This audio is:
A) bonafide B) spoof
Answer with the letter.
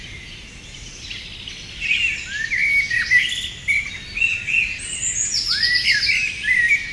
A